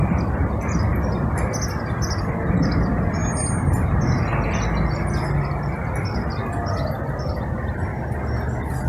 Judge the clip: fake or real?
real